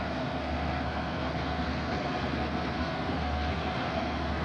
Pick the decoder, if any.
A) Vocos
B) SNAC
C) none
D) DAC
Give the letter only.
B